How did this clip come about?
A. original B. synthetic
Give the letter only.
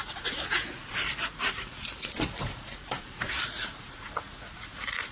B